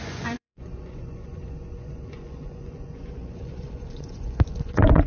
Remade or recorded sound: remade